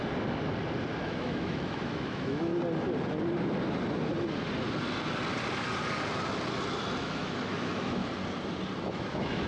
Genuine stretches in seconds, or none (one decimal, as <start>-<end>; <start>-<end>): 0.0-1.0; 2.5-7.0; 8.0-8.9